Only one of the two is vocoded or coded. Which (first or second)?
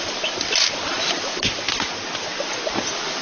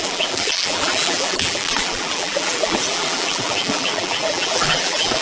second